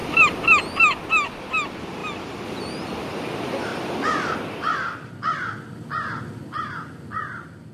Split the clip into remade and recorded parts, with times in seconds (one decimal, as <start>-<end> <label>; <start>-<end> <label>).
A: 0.0-7.7 recorded